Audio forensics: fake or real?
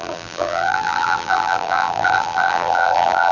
fake